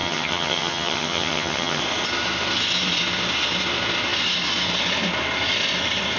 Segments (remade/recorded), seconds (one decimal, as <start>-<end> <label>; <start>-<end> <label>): 0.0-1.8 remade; 1.8-6.2 recorded